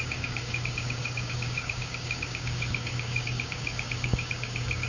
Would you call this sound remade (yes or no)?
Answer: yes